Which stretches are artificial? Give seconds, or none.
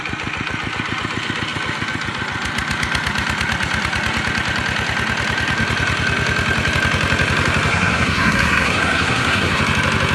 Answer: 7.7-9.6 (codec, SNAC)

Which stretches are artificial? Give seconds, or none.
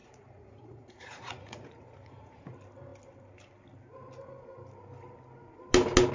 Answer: 0.0-2.5 (vocoder, Vocos)